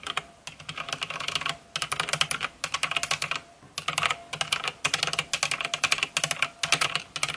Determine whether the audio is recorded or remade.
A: recorded